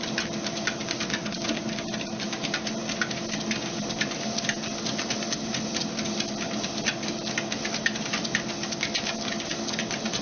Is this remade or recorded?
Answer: recorded